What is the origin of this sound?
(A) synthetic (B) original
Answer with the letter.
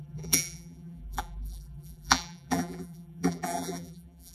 A